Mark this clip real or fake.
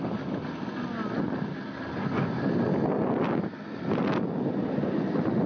real